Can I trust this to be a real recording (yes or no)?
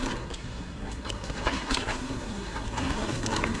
no